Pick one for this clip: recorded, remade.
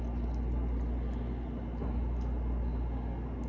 recorded